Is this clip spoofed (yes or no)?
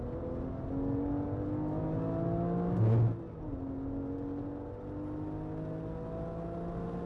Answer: no